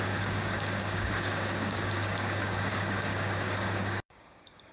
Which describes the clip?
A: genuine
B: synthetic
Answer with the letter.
B